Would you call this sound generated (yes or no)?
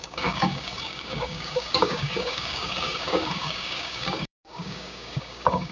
yes